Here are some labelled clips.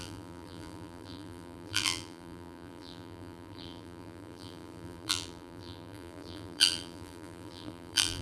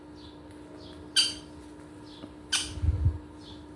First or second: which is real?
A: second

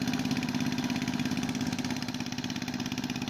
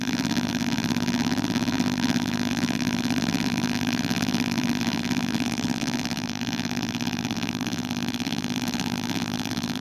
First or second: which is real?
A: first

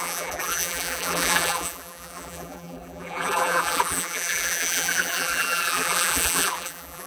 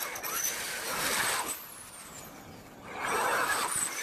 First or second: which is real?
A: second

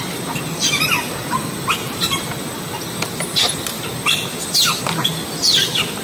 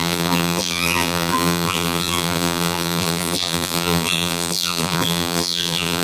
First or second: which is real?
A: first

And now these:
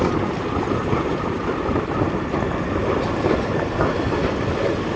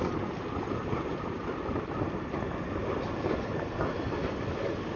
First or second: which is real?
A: second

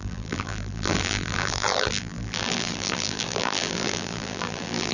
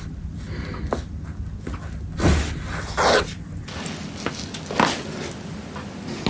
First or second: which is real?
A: second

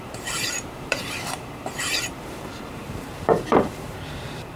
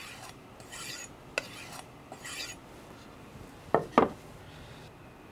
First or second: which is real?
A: second